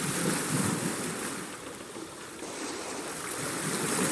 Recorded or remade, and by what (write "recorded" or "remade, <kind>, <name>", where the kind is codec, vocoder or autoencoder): recorded